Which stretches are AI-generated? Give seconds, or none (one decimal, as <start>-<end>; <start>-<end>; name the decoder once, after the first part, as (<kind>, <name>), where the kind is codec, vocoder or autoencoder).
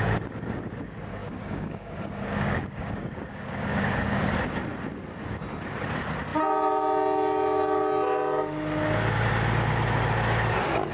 1.2-4.3 (codec, DAC)